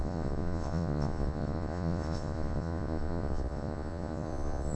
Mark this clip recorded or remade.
remade